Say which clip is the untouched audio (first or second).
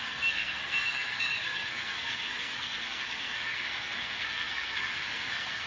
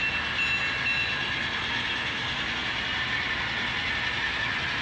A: second